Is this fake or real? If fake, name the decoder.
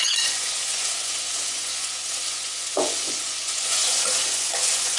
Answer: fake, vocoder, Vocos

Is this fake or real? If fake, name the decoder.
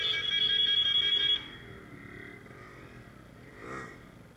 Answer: real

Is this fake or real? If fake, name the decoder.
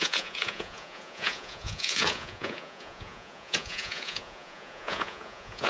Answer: fake, vocoder, Vocos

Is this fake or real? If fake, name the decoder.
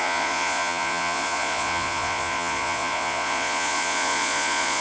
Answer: fake, vocoder, Vocos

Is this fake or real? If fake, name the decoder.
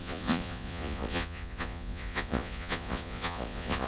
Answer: fake, vocoder, Vocos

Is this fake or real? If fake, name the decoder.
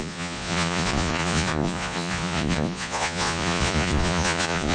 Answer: fake, vocoder, Vocos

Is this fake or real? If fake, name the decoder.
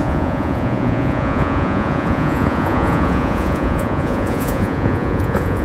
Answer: fake, vocoder, Vocos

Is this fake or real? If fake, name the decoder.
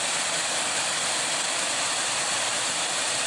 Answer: real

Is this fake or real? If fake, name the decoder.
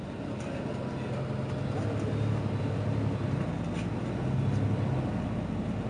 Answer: real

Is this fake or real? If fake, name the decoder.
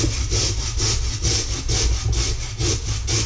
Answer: real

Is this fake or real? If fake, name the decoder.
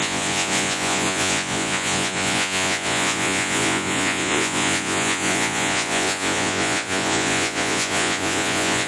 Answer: fake, vocoder, Vocos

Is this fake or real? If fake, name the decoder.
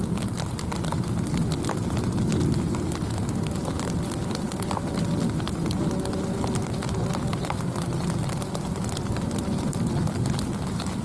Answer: real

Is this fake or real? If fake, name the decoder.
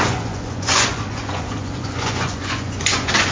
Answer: fake, vocoder, Vocos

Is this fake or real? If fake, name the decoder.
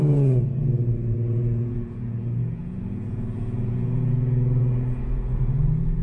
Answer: fake, vocoder, Vocos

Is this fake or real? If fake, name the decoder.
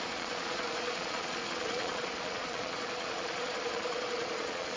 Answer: fake, vocoder, Vocos